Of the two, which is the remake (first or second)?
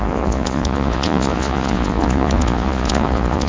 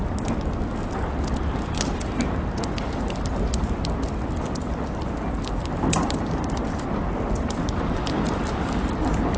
first